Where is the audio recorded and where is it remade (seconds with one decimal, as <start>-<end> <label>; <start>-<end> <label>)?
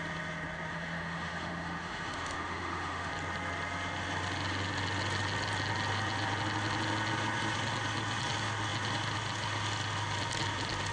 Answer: 0.0-0.7 recorded; 0.7-3.1 remade; 3.1-10.9 recorded